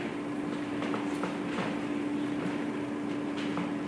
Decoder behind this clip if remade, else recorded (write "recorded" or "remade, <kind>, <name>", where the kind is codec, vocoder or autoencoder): recorded